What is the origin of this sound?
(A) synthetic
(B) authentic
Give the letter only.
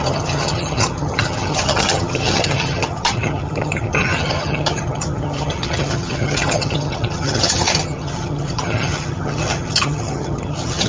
A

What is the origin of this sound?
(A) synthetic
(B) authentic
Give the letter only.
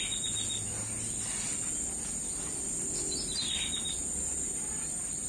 B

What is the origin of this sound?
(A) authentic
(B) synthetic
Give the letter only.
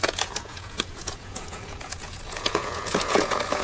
B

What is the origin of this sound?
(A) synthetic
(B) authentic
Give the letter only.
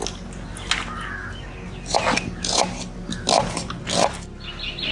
B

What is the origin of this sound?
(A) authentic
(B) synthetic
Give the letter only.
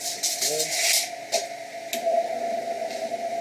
A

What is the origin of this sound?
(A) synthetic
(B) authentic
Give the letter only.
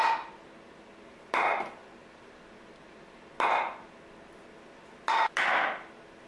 B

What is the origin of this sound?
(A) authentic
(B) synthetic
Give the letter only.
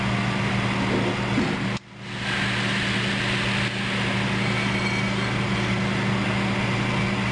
A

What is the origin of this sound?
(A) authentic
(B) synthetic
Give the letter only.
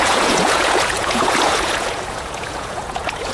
B